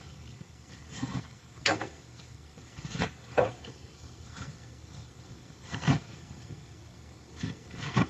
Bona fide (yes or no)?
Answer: no